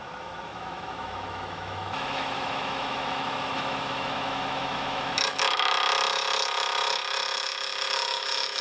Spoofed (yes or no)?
yes